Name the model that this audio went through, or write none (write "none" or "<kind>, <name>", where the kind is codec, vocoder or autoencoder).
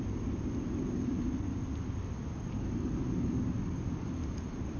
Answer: none